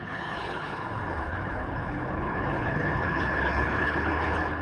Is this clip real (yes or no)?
no